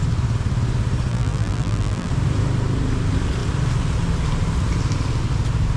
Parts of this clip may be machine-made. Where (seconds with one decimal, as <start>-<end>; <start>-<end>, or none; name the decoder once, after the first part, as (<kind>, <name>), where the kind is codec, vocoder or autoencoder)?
1.1-2.1 (vocoder, BigVGAN v2)